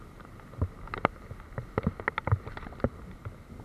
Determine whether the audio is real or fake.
real